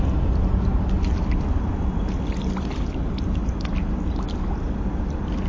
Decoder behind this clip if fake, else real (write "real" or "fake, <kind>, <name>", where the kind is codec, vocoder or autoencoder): real